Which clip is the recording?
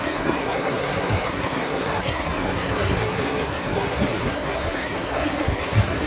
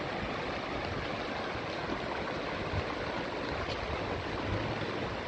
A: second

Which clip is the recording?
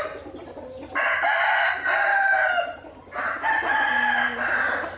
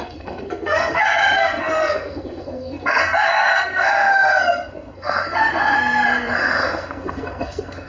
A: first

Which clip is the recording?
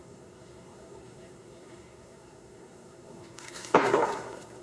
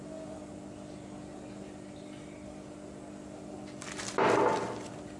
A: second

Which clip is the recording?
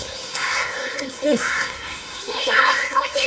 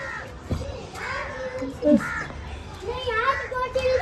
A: second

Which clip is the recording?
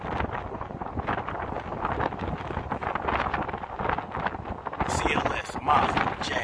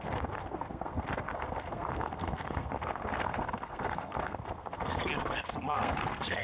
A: first